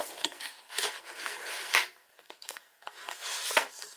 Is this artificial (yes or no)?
yes